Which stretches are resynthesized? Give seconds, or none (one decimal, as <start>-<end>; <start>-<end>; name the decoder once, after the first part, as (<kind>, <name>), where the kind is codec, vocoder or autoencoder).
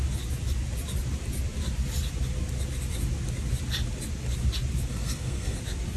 4.9-5.6 (codec, SNAC)